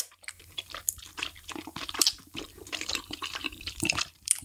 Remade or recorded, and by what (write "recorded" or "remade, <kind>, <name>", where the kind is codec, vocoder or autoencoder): remade, vocoder, BigVGAN v2